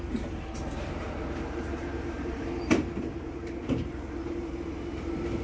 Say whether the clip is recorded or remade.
remade